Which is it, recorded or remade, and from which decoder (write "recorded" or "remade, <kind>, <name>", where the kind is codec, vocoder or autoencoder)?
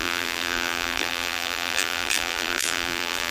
remade, vocoder, BigVGAN v2